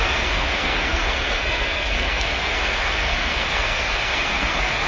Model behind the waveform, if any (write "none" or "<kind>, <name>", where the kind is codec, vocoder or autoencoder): codec, SNAC